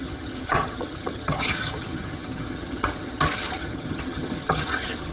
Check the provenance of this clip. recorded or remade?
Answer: remade